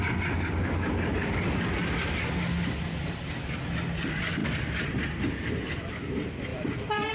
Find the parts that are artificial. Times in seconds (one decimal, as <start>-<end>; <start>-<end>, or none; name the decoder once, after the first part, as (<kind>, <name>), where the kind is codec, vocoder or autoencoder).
6.5-7.1 (vocoder, BigVGAN v2)